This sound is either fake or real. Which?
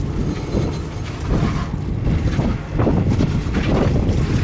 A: real